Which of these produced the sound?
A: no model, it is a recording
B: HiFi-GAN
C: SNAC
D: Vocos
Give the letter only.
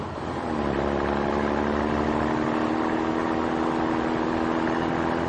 A